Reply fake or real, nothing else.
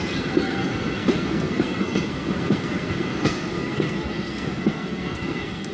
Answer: fake